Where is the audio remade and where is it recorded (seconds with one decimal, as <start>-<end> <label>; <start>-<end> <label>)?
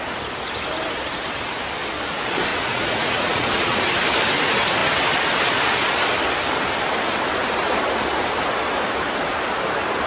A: 0.0-2.5 recorded; 2.5-3.8 remade; 3.8-10.1 recorded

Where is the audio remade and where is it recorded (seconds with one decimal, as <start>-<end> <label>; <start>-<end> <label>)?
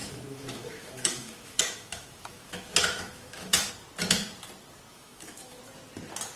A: 0.0-3.7 remade; 3.7-4.9 recorded; 4.9-5.6 remade; 5.6-6.4 recorded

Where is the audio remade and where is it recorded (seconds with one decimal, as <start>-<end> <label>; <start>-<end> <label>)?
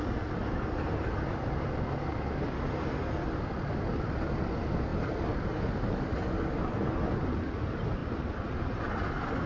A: 0.0-4.9 recorded; 4.9-5.7 remade; 5.7-9.5 recorded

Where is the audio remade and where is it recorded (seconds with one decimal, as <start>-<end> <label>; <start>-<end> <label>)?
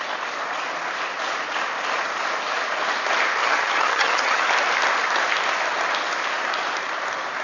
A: 0.0-3.4 recorded; 3.4-4.4 remade; 4.4-7.4 recorded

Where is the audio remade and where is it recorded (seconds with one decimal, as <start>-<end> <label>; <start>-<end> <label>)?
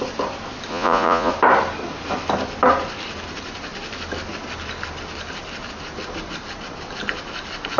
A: 0.0-0.7 recorded; 0.7-1.3 remade; 1.3-7.8 recorded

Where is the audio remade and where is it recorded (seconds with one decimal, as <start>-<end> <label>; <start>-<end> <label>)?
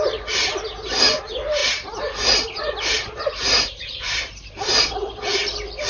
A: 0.0-1.6 recorded; 1.6-5.1 remade; 5.1-5.9 recorded